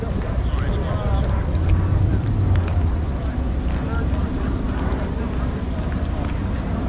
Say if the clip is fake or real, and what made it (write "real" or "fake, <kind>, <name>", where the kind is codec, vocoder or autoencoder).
real